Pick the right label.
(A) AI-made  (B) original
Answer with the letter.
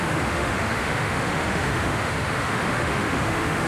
A